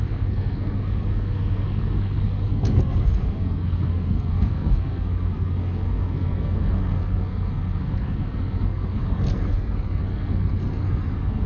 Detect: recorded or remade remade